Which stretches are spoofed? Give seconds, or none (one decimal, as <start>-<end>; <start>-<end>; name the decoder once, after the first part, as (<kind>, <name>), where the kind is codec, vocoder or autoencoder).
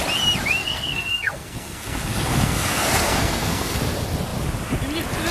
0.6-3.8 (codec, SNAC)